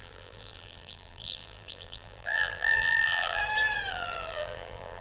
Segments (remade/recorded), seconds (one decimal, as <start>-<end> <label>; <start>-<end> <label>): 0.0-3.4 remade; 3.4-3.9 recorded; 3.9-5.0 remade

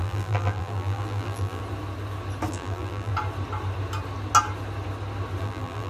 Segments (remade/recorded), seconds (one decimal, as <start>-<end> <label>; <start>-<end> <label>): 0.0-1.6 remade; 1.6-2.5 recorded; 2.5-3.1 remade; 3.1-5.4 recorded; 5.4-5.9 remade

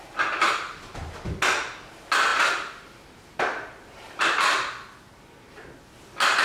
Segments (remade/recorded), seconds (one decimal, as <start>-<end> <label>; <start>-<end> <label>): 0.0-6.4 recorded

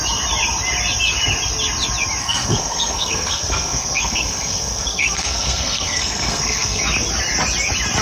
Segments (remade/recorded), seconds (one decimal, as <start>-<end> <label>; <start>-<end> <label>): 0.0-2.2 recorded; 2.2-6.8 remade; 6.8-8.0 recorded

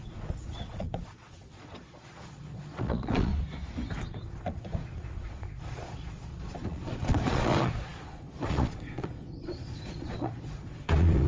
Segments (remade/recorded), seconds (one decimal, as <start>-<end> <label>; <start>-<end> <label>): 0.0-3.3 remade; 3.3-4.0 recorded; 4.0-11.3 remade

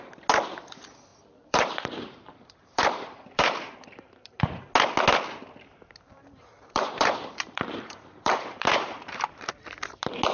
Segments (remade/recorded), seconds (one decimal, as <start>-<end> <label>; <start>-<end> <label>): 0.0-1.1 recorded; 1.1-4.7 remade; 4.7-6.1 recorded; 6.1-9.5 remade; 9.5-10.3 recorded

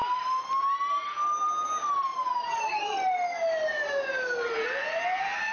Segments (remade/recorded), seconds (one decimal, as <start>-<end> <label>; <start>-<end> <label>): 0.0-5.5 recorded

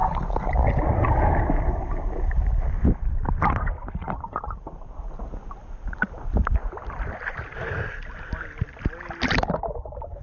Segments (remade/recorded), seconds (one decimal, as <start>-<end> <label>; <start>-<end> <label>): 0.0-10.2 recorded